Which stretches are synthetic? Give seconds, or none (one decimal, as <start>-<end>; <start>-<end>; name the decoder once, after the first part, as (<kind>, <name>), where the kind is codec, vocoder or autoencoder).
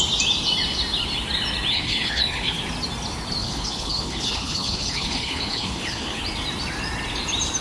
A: 1.7-2.6 (codec, HILCodec); 3.4-6.2